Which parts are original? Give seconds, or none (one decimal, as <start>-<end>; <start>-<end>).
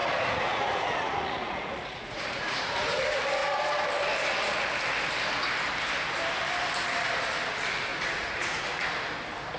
3.0-7.9; 8.6-9.6